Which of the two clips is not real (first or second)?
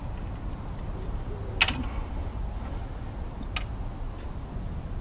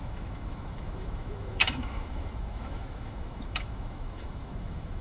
second